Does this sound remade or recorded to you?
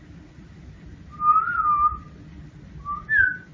recorded